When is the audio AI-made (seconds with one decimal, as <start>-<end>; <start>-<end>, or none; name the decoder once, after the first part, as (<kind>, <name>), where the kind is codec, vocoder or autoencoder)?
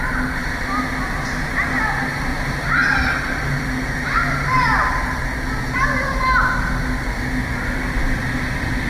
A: 0.4-0.9 (vocoder, BigVGAN v2); 2.3-5.2; 8.0-8.9